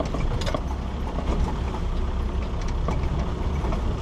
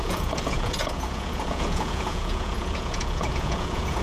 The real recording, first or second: first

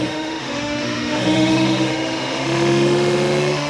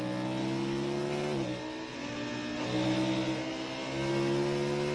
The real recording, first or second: second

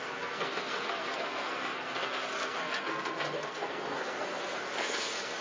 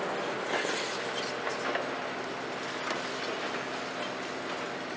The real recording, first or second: second